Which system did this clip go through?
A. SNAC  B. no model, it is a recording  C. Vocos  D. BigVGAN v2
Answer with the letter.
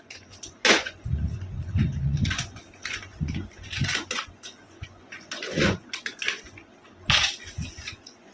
C